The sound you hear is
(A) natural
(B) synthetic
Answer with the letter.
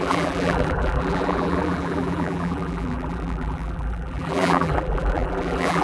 B